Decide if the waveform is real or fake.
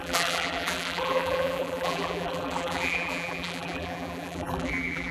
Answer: fake